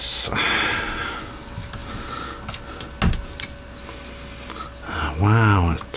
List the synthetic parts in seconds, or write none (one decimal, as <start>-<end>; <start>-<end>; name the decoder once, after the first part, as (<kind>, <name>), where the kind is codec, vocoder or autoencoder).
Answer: none